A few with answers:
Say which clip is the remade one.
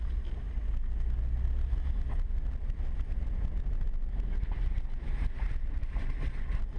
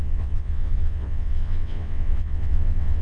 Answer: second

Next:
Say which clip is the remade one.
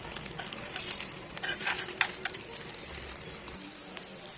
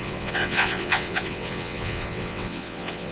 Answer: second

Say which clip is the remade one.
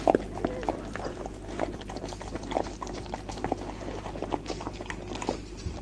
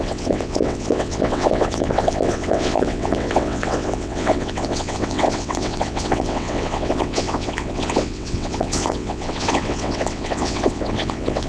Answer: second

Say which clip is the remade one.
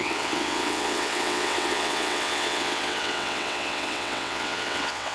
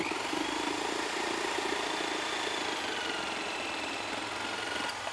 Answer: first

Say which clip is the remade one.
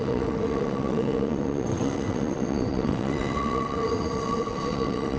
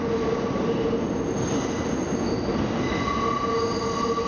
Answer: first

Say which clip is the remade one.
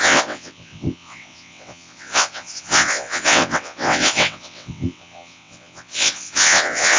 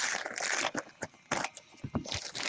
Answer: first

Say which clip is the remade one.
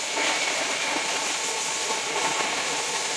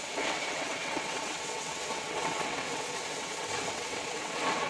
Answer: second